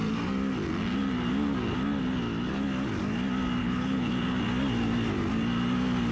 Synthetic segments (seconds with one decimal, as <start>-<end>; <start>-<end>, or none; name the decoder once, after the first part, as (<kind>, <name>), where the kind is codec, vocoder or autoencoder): 3.6-4.1 (codec, HILCodec)